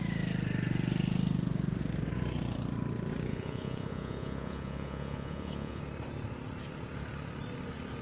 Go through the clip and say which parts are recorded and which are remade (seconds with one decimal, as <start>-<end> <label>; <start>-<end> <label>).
0.0-3.3 recorded; 3.3-5.8 remade; 5.8-8.0 recorded